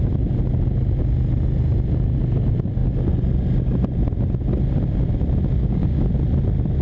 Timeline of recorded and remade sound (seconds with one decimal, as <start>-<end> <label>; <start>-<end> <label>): 0.0-5.6 recorded; 5.6-6.1 remade; 6.1-6.8 recorded